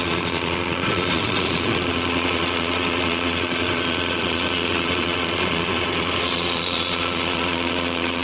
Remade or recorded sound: remade